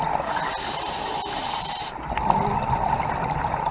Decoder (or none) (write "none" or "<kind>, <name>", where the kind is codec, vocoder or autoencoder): none